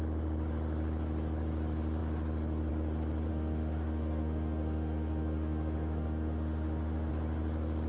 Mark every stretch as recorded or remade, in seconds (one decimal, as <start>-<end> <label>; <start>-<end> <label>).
0.0-3.3 recorded; 3.3-7.1 remade; 7.1-7.9 recorded